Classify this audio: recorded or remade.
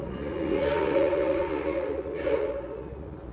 remade